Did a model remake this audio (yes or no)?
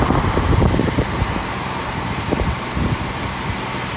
yes